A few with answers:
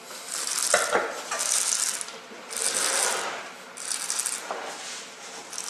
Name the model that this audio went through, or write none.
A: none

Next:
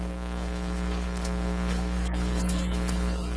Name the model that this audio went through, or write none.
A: codec, SNAC